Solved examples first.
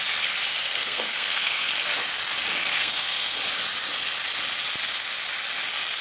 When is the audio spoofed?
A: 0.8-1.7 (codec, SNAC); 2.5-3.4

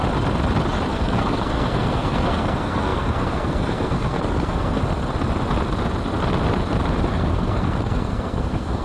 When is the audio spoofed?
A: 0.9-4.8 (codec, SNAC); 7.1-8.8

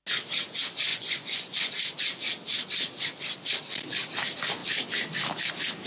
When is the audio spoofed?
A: 0.9-1.7 (vocoder, Vocos)

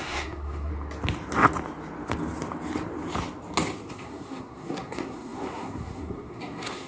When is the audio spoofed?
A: 0.0-0.7 (codec, SNAC); 3.9-6.9

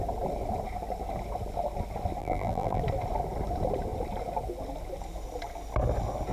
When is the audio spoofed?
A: 2.2-2.8 (vocoder, BigVGAN v2)

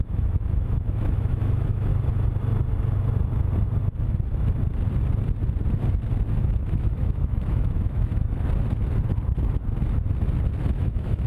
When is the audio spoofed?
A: 0.0-1.9 (autoencoder, DAC-VAE); 6.3-8.1; 10.7-11.3

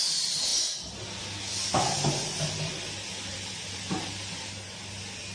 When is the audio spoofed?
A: 3.3-4.0 (vocoder, BigVGAN v2)